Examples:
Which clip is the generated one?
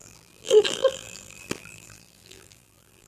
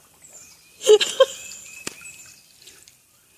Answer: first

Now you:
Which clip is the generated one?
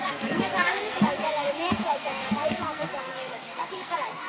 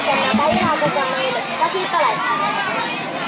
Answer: first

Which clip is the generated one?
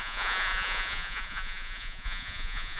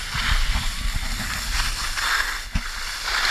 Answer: first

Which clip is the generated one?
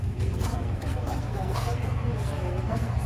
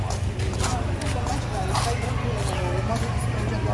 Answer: first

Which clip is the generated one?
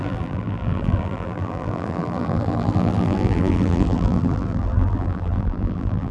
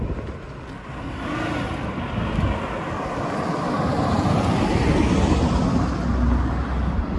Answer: first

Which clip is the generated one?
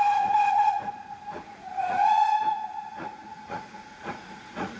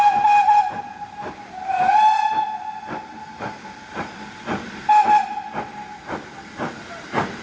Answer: first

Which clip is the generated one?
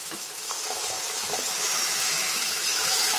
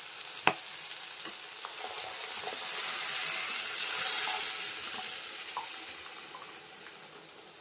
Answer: first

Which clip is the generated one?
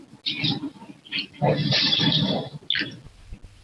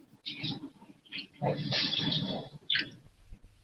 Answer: second